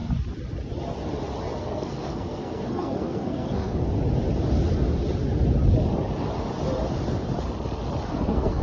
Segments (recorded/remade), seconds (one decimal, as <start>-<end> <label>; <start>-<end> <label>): 0.0-1.6 recorded; 1.6-3.8 remade; 3.8-8.1 recorded; 8.1-8.6 remade